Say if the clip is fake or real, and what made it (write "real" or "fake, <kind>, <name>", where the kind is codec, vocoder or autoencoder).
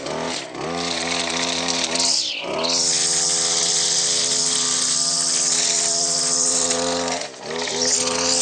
real